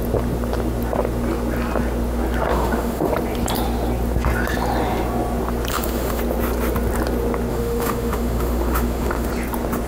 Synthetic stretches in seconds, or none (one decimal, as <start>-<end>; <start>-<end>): 2.5-3.1; 5.7-6.2; 7.5-9.3